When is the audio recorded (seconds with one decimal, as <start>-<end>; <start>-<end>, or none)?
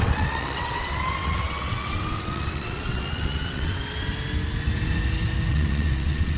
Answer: 3.8-5.5